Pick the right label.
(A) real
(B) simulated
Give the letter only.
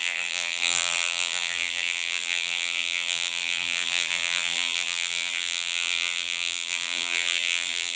B